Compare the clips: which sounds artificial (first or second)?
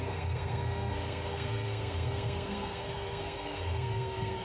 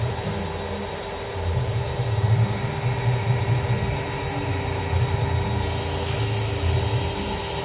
first